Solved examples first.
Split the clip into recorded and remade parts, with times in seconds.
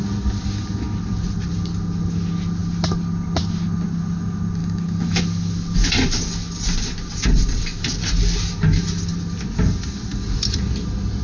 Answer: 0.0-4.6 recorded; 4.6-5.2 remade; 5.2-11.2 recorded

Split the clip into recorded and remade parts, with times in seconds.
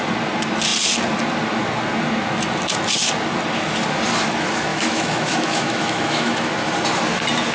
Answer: 0.0-4.7 recorded; 4.7-6.7 remade; 6.7-7.5 recorded